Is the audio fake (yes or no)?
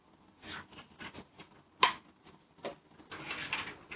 no